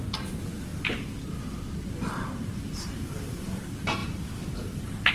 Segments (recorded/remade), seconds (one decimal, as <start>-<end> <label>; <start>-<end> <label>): 0.0-2.5 recorded; 2.5-3.6 remade; 3.6-4.0 recorded; 4.0-5.1 remade